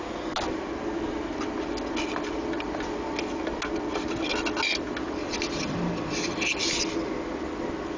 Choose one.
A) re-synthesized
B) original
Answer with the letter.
B